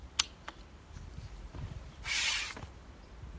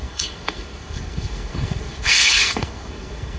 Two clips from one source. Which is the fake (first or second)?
second